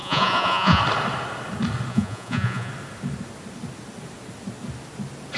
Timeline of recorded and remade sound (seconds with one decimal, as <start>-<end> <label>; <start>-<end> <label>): 0.0-0.8 remade; 0.8-1.9 recorded; 1.9-2.7 remade; 2.7-5.4 recorded